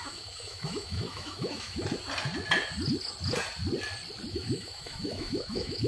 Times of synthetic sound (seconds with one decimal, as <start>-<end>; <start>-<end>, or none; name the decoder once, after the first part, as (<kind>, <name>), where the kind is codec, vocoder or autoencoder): 0.0-1.8 (autoencoder, DAC-VAE); 4.3-5.9